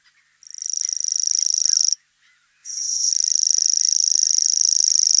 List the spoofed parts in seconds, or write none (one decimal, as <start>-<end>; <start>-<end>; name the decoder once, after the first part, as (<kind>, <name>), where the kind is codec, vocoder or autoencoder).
2.6-3.1 (vocoder, Vocos)